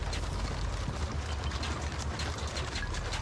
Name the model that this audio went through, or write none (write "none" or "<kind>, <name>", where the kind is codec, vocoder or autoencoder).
none